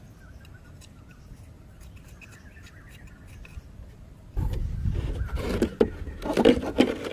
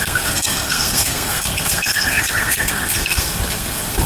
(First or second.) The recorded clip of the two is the first